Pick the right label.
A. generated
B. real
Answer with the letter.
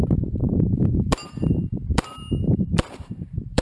A